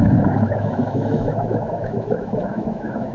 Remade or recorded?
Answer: remade